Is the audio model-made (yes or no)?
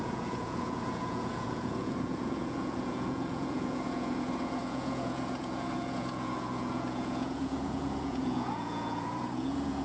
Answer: yes